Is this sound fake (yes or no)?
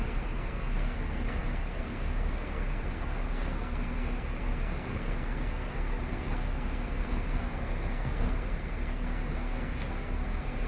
yes